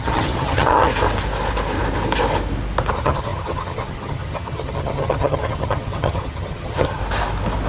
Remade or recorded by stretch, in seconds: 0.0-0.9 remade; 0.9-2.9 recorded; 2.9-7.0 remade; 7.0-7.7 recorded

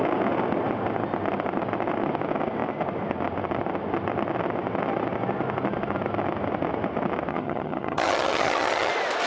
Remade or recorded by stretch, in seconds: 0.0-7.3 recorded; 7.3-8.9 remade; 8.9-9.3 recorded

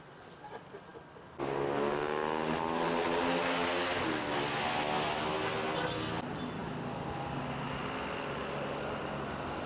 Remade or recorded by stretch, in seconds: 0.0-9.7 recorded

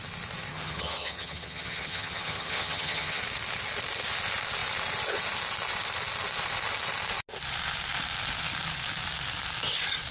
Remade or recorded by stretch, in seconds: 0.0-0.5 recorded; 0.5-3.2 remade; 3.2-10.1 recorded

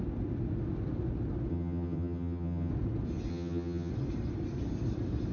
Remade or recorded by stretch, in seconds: 0.0-1.5 recorded; 1.5-2.7 remade; 2.7-3.3 recorded; 3.3-3.9 remade; 3.9-5.3 recorded

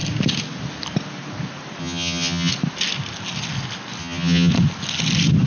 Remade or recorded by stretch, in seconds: 0.0-1.8 recorded; 1.8-2.5 remade; 2.5-4.0 recorded; 4.0-4.5 remade; 4.5-5.5 recorded